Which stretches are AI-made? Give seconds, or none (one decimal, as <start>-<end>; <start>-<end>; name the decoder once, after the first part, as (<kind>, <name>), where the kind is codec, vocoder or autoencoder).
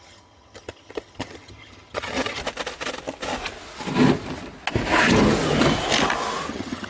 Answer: 0.0-2.4 (vocoder, HiFi-GAN); 6.5-6.9